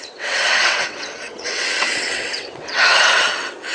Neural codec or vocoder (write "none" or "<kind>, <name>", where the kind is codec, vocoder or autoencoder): vocoder, WaveNeXt